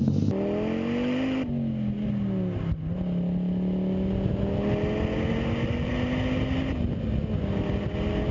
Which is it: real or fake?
real